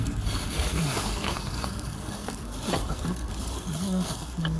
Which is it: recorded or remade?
remade